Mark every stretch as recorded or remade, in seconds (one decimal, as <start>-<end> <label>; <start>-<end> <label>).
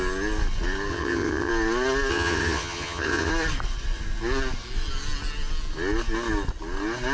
0.0-0.9 recorded; 0.9-1.5 remade; 1.5-2.1 recorded; 2.1-3.3 remade; 3.3-7.1 recorded